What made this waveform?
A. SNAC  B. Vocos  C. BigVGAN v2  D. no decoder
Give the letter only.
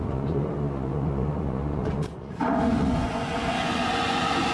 B